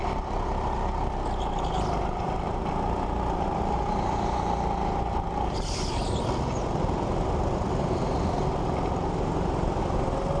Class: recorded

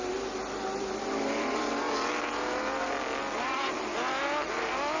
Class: recorded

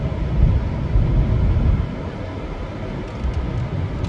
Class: recorded